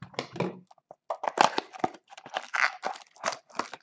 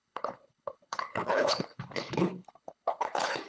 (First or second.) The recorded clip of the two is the first